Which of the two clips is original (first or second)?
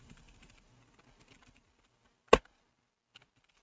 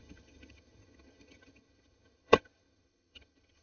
first